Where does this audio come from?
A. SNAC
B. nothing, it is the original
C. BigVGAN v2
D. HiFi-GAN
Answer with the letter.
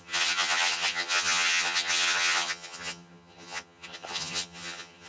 D